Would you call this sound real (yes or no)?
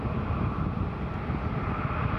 yes